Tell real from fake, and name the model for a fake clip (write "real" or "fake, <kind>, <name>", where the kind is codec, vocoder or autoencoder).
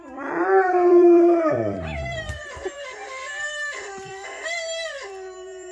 fake, vocoder, BigVGAN v2